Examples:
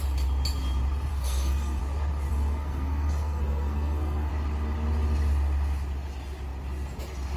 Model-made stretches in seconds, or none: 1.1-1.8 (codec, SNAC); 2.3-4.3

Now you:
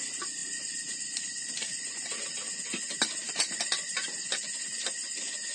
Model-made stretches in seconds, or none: none

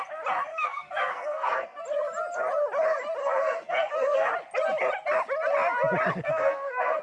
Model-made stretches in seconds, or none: 0.5-1.8 (codec, SNAC); 3.2-4.3; 6.1-7.0

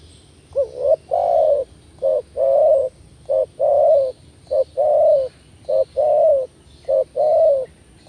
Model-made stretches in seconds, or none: none

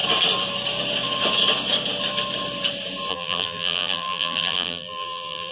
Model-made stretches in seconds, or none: 3.1-5.5 (vocoder, BigVGAN v2)